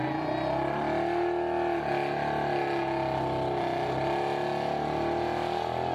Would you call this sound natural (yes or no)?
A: yes